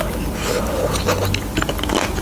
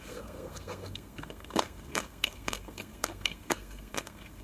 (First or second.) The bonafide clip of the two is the first